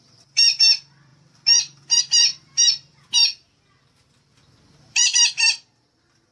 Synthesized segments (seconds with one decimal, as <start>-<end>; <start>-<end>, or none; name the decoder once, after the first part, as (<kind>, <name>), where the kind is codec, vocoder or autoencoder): none